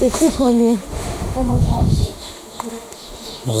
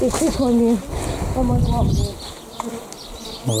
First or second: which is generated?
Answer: first